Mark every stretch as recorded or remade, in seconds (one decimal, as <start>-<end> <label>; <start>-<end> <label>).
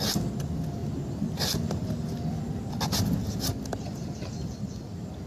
0.0-5.3 recorded